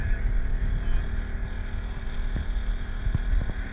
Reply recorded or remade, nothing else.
recorded